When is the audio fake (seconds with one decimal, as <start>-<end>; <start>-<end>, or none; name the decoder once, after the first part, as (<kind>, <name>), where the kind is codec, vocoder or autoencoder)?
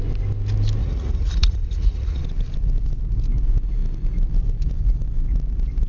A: 0.8-2.2 (vocoder, Vocos)